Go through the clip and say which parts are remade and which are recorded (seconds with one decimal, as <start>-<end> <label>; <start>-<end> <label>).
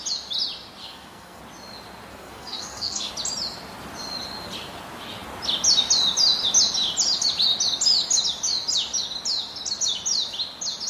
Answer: 0.0-0.8 recorded; 0.8-1.4 remade; 1.4-2.1 recorded; 2.1-3.1 remade; 3.1-10.9 recorded